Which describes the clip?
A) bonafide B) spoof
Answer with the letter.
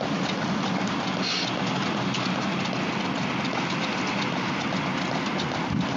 A